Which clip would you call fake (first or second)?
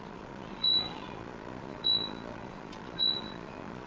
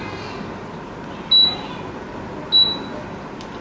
first